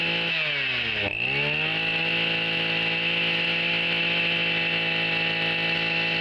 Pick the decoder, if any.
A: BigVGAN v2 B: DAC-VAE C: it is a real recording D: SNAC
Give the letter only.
C